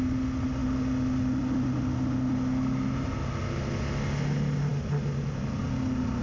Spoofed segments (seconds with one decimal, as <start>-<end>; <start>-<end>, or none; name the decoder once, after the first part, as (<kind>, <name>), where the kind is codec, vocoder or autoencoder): none